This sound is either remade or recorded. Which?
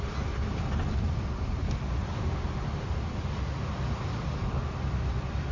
recorded